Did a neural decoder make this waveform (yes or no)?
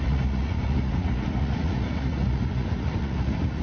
yes